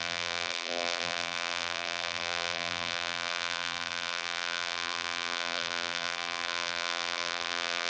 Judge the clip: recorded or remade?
remade